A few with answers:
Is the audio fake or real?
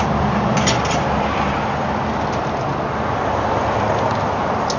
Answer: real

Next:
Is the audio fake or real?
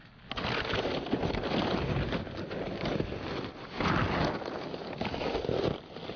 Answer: real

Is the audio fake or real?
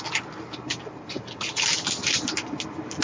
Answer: real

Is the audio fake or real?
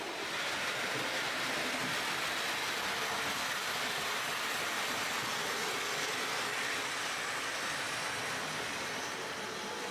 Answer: real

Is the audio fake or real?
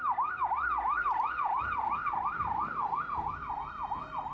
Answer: fake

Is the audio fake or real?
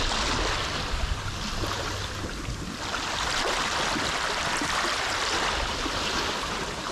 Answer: real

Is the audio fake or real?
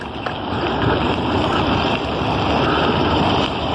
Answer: real